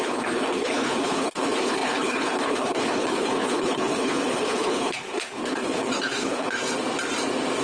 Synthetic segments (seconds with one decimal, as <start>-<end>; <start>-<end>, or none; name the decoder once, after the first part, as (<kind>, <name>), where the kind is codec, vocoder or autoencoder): 0.0-6.6 (codec, HILCodec)